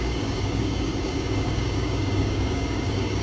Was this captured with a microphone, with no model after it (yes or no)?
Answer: no